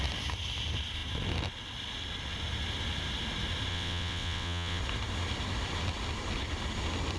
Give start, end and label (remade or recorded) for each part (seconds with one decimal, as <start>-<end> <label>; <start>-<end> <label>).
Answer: 0.0-3.7 recorded; 3.7-4.8 remade; 4.8-7.2 recorded